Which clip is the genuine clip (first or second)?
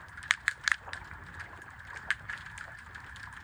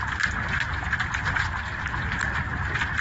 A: second